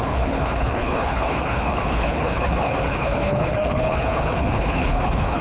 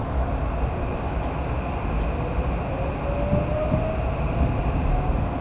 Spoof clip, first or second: first